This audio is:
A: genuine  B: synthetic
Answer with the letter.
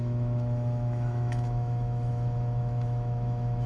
B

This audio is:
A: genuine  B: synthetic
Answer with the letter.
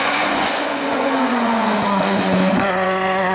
B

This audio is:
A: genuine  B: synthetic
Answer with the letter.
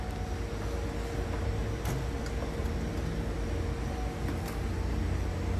A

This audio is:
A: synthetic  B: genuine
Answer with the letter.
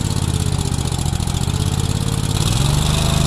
B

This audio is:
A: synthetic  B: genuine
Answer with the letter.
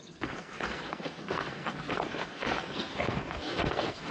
A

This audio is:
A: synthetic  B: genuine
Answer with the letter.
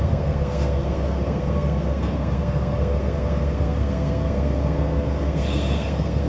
A